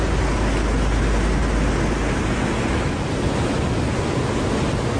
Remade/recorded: recorded